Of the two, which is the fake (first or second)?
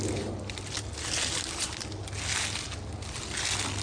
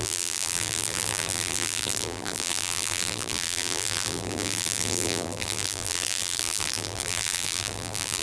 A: second